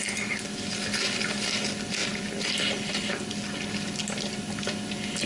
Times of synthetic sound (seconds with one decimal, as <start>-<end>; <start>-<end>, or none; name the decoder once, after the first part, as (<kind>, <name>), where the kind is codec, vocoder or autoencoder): none